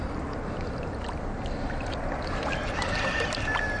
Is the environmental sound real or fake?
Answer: real